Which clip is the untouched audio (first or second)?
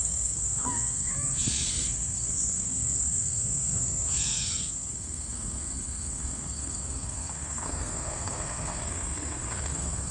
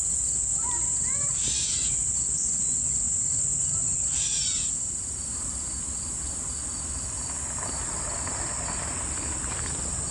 second